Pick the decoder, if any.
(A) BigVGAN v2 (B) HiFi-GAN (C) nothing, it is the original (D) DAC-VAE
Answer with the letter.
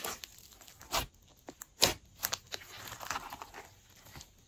C